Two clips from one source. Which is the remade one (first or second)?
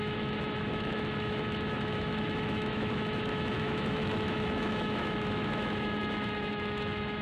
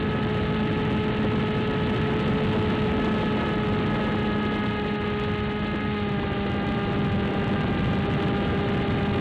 first